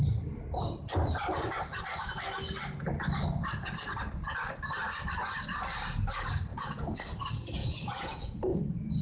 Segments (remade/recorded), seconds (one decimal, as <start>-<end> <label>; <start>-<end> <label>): 0.0-6.5 recorded; 6.5-7.0 remade; 7.0-7.6 recorded; 7.6-9.0 remade